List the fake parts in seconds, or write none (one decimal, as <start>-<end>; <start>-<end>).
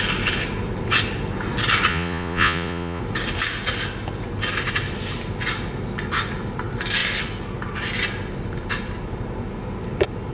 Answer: 1.9-3.0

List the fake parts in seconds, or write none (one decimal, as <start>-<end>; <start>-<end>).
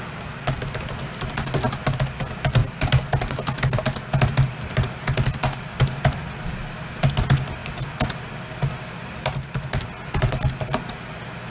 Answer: none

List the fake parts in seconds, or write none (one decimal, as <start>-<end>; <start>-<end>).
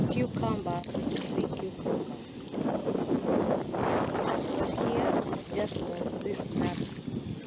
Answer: none